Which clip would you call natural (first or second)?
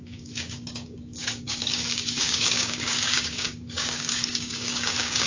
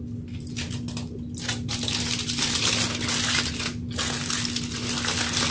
second